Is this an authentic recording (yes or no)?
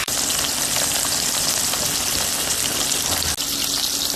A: yes